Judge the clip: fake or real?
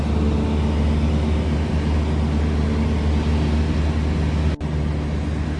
real